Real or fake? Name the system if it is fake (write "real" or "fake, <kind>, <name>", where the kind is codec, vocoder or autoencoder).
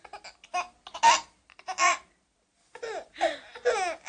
real